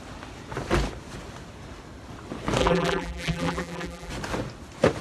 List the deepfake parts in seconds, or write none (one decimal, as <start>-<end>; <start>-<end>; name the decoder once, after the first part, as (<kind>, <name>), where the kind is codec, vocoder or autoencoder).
2.6-4.1 (vocoder, BigVGAN v2)